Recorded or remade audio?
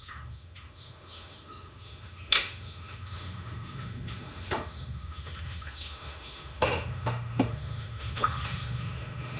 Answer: remade